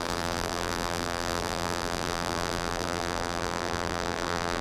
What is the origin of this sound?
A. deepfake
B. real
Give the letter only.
A